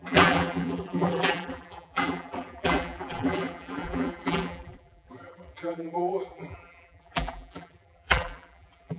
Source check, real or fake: fake